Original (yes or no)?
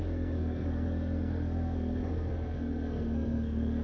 no